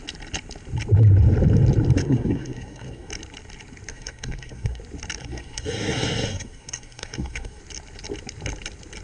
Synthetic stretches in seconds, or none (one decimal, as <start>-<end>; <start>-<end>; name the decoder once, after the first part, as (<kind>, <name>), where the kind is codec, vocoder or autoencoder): 2.0-3.1 (codec, SNAC); 3.9-4.8; 5.2-7.6